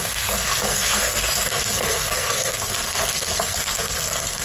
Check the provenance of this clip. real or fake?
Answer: fake